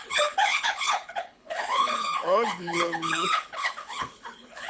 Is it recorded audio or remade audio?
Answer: remade